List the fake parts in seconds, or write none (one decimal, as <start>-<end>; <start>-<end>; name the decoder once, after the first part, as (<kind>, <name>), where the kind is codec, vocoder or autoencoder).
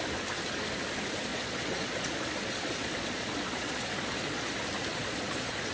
1.3-4.5 (vocoder, Vocos); 4.9-5.7